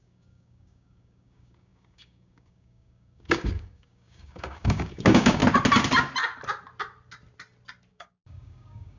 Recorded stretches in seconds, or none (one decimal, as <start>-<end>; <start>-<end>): 5.4-7.9